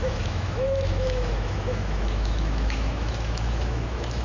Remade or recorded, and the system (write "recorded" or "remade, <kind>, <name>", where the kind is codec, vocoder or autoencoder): remade, autoencoder, DAC-VAE